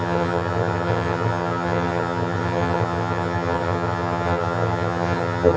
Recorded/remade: remade